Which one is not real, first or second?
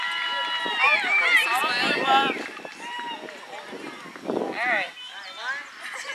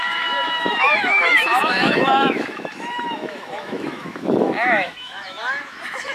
second